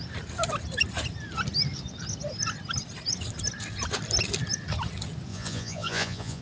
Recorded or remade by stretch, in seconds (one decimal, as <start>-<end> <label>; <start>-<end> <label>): 0.0-5.3 recorded; 5.3-6.4 remade